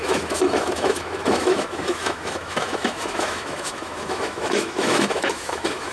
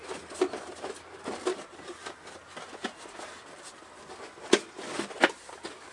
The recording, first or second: second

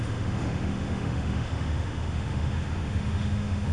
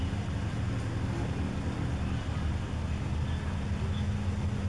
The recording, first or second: second